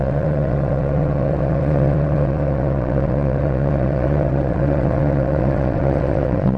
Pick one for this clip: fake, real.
fake